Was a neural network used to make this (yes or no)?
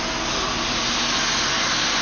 no